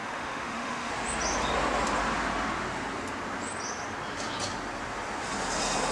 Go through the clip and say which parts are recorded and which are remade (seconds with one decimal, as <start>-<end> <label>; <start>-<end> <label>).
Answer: 0.0-0.9 remade; 0.9-5.9 recorded